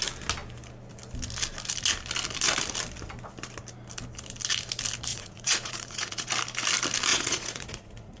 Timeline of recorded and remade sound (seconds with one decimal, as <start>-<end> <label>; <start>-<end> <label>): 0.0-5.1 recorded; 5.1-6.3 remade; 6.3-7.1 recorded; 7.1-8.2 remade